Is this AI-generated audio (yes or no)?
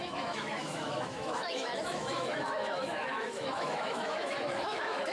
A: yes